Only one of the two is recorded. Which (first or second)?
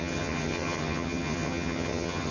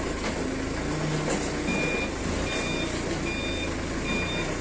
second